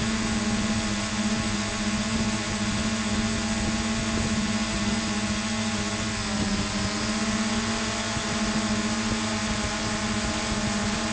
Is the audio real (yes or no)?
yes